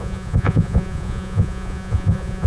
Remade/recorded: remade